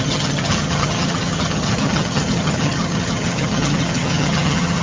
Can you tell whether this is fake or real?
fake